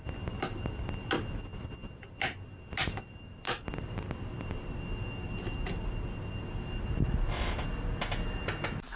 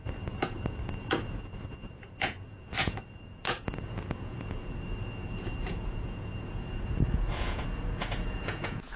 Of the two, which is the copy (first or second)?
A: second